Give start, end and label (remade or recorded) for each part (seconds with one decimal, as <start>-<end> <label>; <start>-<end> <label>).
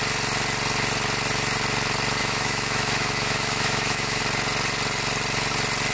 0.0-2.2 recorded; 2.2-4.2 remade; 4.2-5.9 recorded